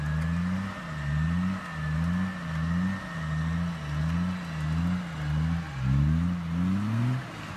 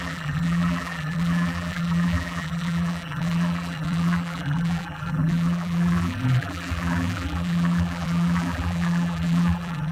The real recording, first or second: first